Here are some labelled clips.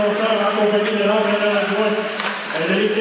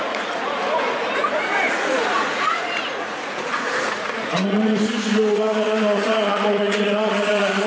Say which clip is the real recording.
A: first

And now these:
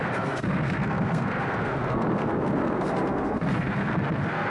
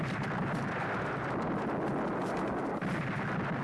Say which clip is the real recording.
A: second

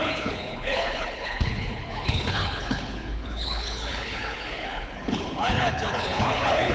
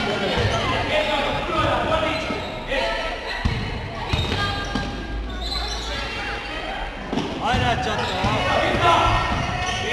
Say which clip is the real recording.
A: second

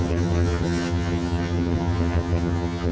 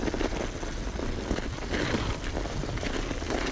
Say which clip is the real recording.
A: second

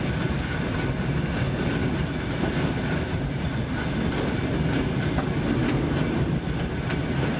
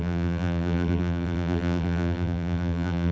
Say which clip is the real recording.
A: first